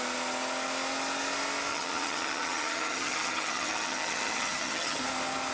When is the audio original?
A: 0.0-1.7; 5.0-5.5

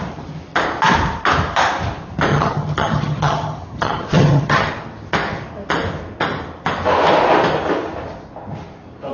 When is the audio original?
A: 0.0-2.3; 4.7-9.1

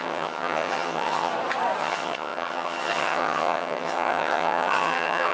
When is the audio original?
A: 1.3-1.8

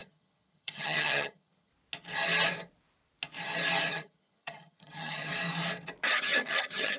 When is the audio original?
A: 1.7-3.9; 5.3-6.2